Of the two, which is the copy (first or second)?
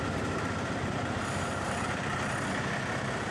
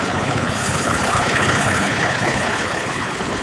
second